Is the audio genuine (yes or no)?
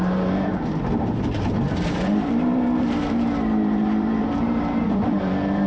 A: no